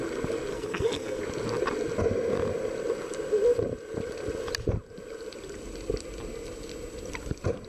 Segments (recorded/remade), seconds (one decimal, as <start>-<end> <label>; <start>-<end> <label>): 0.0-0.5 recorded; 0.5-1.2 remade; 1.2-7.7 recorded